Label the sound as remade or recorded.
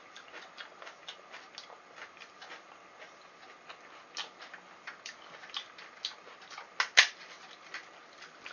recorded